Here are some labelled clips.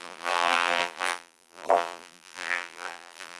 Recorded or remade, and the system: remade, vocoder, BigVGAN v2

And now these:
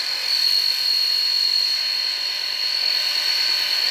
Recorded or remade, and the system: recorded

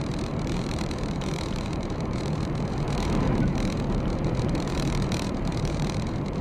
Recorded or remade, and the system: remade, vocoder, BigVGAN v2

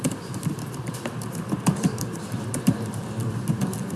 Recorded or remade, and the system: remade, vocoder, BigVGAN v2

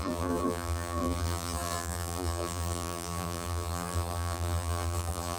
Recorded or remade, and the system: remade, vocoder, BigVGAN v2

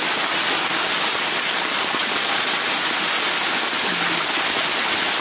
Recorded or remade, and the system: recorded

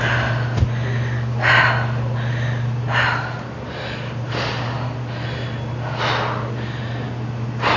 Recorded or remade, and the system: recorded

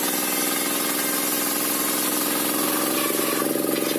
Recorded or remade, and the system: recorded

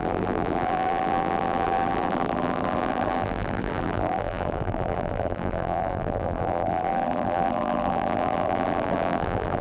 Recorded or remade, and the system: remade, vocoder, BigVGAN v2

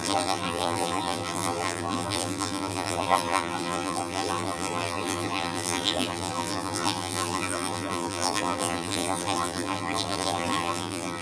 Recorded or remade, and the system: remade, vocoder, BigVGAN v2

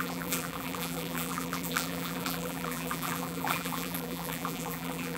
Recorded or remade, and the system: remade, vocoder, BigVGAN v2